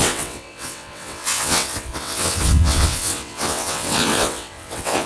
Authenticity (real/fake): fake